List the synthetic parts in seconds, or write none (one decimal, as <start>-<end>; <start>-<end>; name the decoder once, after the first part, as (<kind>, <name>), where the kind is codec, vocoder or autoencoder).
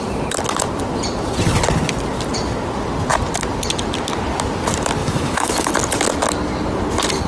5.0-5.7 (autoencoder, DAC-VAE)